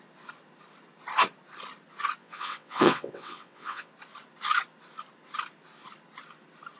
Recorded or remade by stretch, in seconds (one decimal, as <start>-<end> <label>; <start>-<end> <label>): 0.0-2.2 recorded; 2.2-3.9 remade; 3.9-6.8 recorded